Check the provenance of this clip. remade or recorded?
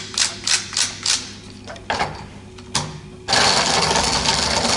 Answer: recorded